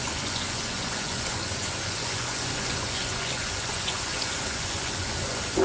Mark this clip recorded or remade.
remade